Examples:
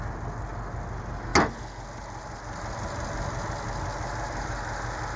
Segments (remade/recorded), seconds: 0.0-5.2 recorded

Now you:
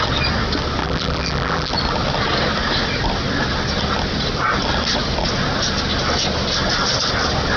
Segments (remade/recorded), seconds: 0.0-0.8 recorded; 0.8-1.7 remade; 1.7-7.6 recorded